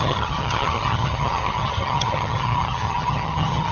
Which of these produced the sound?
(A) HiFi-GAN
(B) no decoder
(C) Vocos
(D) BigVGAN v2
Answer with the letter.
A